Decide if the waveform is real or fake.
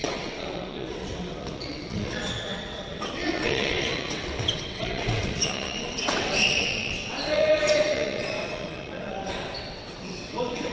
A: fake